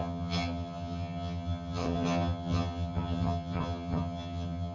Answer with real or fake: fake